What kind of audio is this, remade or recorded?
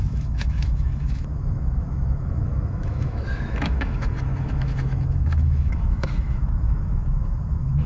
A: remade